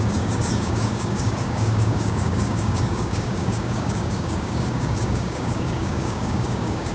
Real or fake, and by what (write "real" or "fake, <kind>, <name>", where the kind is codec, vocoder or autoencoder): fake, codec, DAC